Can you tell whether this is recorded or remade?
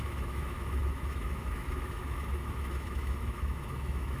remade